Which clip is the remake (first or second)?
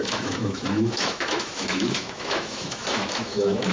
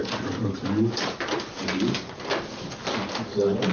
first